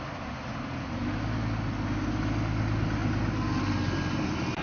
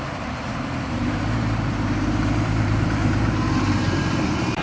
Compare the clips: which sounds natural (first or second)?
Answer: first